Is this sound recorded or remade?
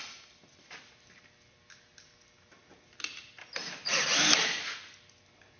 recorded